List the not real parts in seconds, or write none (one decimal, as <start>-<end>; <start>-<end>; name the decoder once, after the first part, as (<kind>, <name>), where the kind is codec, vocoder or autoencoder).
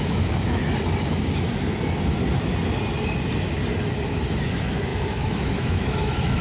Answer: 0.0-0.6 (autoencoder, DAC-VAE); 4.4-6.4